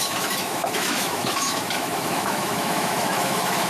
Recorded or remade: remade